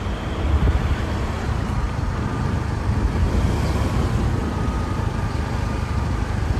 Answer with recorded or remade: remade